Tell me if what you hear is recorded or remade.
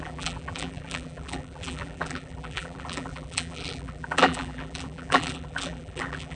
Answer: remade